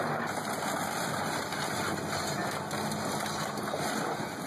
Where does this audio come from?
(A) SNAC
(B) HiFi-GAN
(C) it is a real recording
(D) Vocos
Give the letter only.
C